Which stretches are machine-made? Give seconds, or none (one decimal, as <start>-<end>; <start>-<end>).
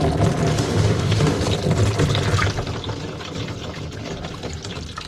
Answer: 0.5-1.4